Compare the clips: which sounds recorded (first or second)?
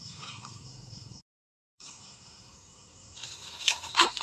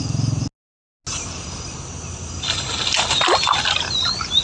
second